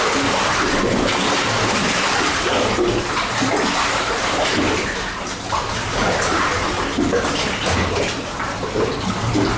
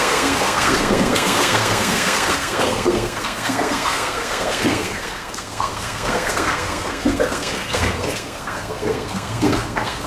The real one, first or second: first